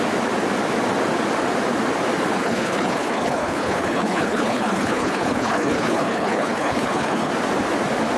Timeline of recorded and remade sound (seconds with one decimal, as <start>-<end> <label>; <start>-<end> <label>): 0.0-2.4 recorded; 2.4-7.3 remade; 7.3-8.2 recorded